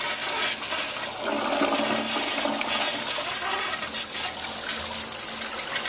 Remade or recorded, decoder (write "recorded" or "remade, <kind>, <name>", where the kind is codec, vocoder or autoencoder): recorded